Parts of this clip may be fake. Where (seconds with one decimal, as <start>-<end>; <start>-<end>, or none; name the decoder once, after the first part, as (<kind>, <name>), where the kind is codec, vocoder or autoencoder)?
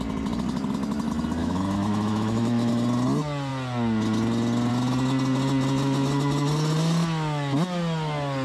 1.4-2.7 (autoencoder, DAC-VAE)